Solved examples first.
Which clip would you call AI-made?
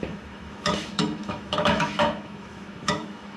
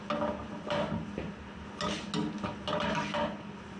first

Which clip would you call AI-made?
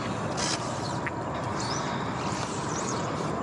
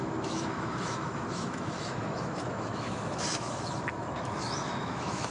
second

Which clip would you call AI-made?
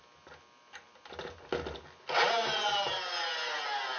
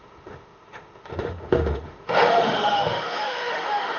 second